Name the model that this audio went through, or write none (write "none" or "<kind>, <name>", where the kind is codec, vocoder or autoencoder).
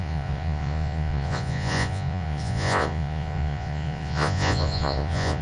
vocoder, Vocos